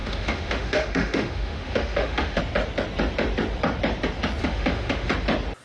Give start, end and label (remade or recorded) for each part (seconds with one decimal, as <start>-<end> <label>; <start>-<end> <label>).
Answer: 0.0-2.4 remade; 2.4-4.4 recorded; 4.4-5.1 remade; 5.1-5.6 recorded